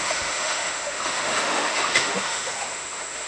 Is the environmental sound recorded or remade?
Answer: remade